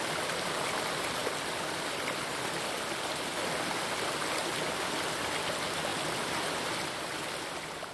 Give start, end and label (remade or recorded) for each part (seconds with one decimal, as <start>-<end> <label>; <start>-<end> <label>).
0.0-7.9 recorded